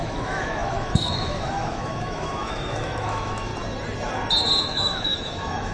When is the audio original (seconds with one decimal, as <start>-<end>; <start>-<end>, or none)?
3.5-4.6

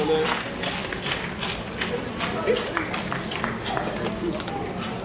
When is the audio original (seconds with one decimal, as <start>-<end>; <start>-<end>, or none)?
0.0-5.0

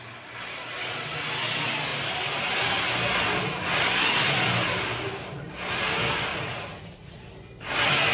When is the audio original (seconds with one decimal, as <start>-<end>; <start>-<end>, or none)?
0.0-6.3; 7.2-8.1

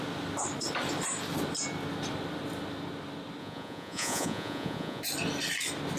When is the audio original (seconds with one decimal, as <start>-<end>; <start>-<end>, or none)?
0.0-3.4; 5.0-6.0